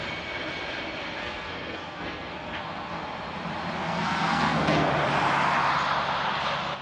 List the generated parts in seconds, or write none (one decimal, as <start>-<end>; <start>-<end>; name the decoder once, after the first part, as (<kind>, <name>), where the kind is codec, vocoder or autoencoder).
1.2-3.0 (codec, SNAC); 3.8-4.9